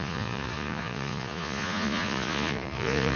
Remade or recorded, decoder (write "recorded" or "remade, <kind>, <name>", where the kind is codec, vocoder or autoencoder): remade, vocoder, Vocos